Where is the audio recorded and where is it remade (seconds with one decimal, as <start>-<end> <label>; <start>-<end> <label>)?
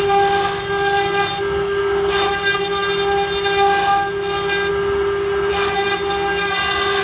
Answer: 0.0-7.0 recorded